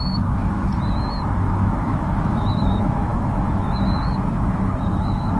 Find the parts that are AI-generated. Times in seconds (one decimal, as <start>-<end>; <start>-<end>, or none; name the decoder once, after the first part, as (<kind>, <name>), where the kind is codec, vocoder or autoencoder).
0.0-0.6 (autoencoder, DAC-VAE); 1.4-5.4